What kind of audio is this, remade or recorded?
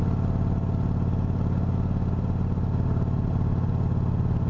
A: recorded